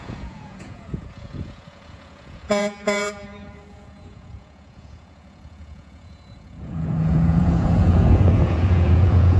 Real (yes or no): no